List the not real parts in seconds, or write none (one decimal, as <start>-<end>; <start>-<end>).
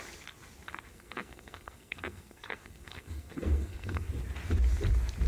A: 0.9-4.1